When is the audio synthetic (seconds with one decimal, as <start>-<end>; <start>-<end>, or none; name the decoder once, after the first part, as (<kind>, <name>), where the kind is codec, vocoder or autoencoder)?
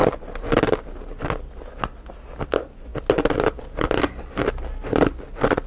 none